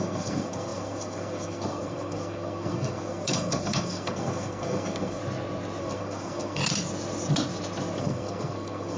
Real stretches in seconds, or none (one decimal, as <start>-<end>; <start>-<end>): 5.2-5.8; 6.6-8.0